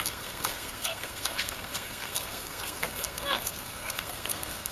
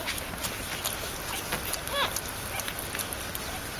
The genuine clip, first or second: second